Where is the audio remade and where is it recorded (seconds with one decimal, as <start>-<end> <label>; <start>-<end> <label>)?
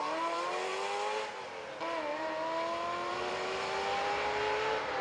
0.0-0.7 remade; 0.7-3.1 recorded; 3.1-5.0 remade